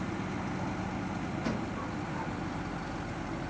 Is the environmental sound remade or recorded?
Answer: recorded